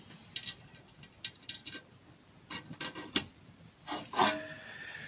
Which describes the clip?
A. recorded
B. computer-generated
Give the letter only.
A